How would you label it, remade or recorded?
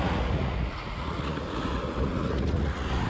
remade